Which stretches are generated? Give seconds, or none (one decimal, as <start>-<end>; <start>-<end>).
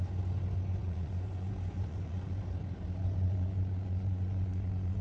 0.8-2.4; 3.0-5.0